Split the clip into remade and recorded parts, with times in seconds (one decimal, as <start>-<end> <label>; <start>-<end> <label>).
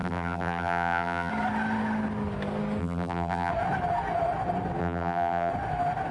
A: 0.0-1.3 remade; 1.3-2.8 recorded; 2.8-3.5 remade; 3.5-4.8 recorded; 4.8-5.5 remade; 5.5-6.1 recorded